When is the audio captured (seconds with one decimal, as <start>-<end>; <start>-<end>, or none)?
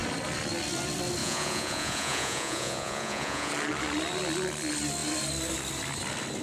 0.0-1.2; 3.5-6.4